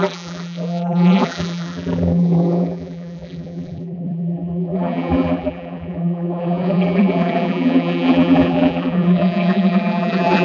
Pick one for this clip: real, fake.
fake